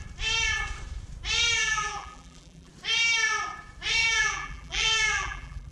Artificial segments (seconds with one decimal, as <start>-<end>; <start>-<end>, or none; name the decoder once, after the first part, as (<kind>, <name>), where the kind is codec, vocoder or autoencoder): 1.6-2.7 (vocoder, BigVGAN v2); 4.0-5.7